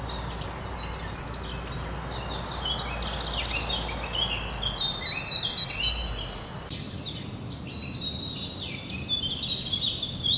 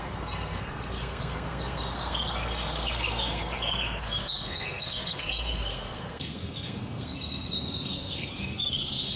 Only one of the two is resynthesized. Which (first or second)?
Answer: second